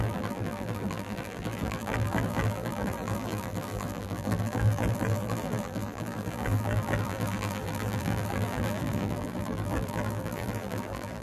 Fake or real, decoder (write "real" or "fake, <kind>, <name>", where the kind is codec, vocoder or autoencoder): fake, vocoder, BigVGAN v2